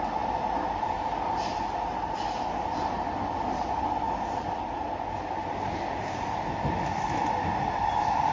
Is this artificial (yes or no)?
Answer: no